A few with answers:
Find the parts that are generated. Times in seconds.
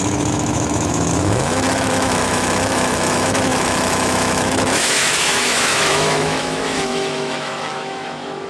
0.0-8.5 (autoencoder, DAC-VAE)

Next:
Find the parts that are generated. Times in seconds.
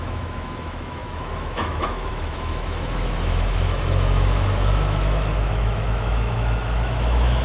0.0-7.4 (autoencoder, DAC-VAE)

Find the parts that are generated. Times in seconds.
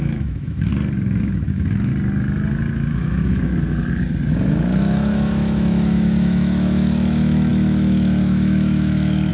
0.0-0.7 (autoencoder, DAC-VAE); 1.2-1.9; 2.9-3.5; 4.3-9.3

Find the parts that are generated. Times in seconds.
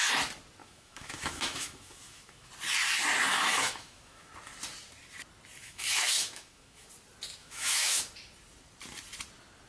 0.6-2.5 (autoencoder, DAC-VAE); 3.3-4.3; 5.6-6.9; 7.4-8.0